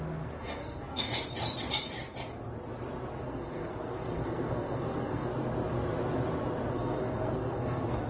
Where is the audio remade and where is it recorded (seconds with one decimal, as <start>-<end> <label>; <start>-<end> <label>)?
0.0-1.1 remade; 1.1-3.2 recorded; 3.2-5.3 remade; 5.3-6.7 recorded; 6.7-8.1 remade